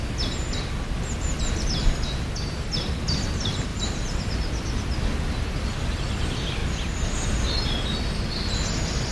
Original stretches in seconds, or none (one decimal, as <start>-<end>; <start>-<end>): 0.0-3.7; 4.5-9.1